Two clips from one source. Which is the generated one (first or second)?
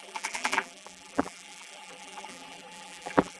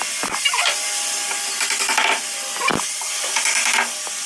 first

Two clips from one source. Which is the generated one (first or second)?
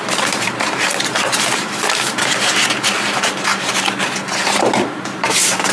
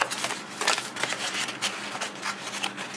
first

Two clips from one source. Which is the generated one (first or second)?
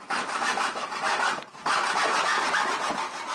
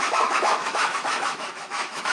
second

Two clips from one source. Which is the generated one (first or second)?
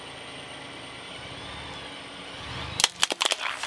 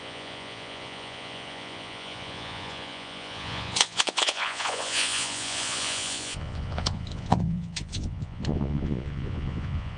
second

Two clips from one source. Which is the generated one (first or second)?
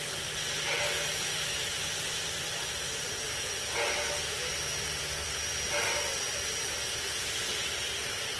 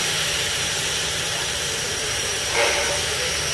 second